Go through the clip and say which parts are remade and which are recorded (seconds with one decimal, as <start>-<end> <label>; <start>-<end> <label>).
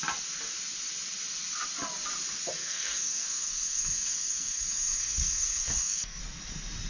0.0-2.6 recorded; 2.6-6.2 remade; 6.2-6.9 recorded